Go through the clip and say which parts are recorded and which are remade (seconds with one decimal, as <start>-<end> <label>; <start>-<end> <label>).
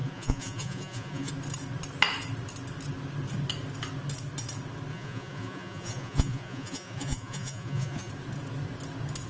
0.0-1.3 remade; 1.3-4.9 recorded; 4.9-8.1 remade; 8.1-9.3 recorded